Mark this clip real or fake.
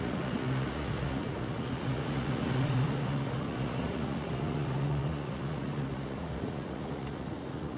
fake